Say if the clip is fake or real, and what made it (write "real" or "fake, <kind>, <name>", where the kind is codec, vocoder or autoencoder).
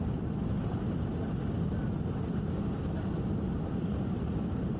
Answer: fake, vocoder, BigVGAN v2